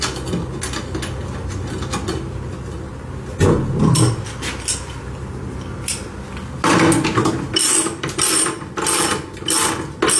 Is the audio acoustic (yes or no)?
yes